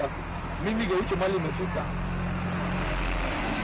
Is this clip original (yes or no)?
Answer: yes